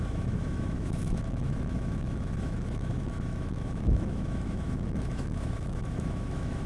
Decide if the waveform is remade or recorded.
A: remade